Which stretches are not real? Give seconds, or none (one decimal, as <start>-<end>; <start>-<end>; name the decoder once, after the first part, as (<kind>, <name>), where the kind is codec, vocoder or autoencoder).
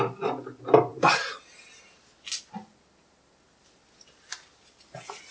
none